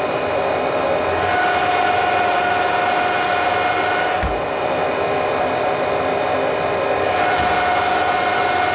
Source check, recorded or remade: recorded